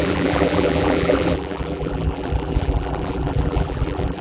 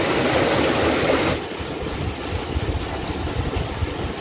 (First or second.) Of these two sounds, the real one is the second